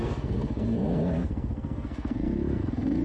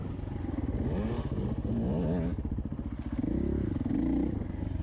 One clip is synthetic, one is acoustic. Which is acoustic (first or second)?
second